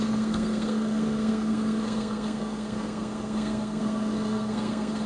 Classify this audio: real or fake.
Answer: fake